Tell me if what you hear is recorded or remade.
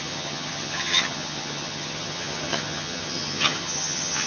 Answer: remade